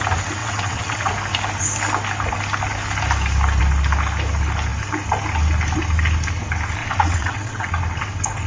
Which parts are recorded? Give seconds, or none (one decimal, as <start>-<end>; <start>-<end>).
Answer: 0.0-0.4; 1.1-6.8; 7.7-8.5